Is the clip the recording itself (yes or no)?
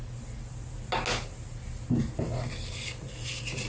yes